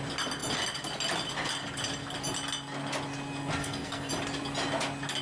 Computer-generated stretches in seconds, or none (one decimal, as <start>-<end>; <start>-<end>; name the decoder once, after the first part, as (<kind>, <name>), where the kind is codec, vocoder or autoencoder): 3.6-4.1 (codec, SNAC)